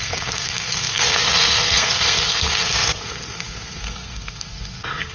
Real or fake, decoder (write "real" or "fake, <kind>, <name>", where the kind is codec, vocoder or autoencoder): fake, codec, SNAC